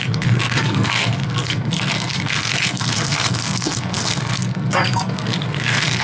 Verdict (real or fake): fake